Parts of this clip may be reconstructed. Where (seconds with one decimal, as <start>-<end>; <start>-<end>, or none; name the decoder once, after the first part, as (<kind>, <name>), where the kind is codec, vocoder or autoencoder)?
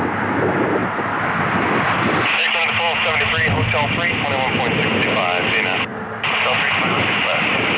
none